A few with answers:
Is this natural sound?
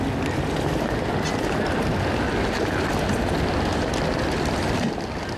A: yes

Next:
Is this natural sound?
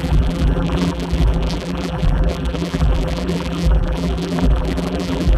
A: no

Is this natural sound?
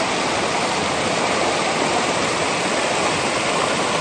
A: yes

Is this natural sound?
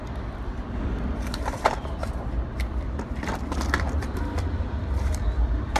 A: no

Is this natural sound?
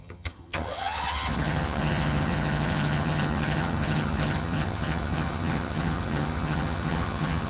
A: no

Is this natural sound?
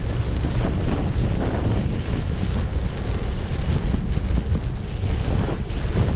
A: yes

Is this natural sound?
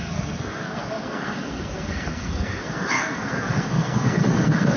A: no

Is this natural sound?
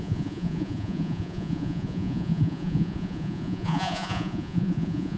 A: no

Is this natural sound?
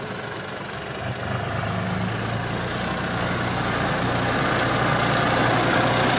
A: yes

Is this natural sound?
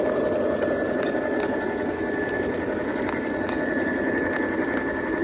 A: yes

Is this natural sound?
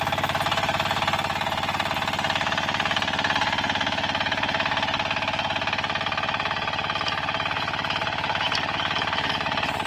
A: yes